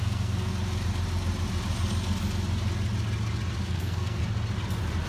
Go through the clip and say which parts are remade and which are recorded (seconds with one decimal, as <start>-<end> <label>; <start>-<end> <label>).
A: 0.0-0.5 remade; 0.5-3.6 recorded; 3.6-4.2 remade; 4.2-5.1 recorded